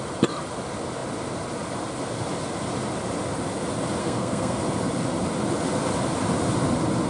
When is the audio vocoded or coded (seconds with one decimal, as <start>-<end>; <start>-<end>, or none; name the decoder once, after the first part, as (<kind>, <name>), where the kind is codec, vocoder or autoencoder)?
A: 4.0-4.6 (codec, SNAC)